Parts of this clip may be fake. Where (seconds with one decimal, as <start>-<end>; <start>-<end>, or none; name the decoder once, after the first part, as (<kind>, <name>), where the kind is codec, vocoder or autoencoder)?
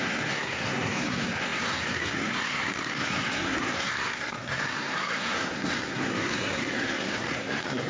0.0-7.9 (codec, SNAC)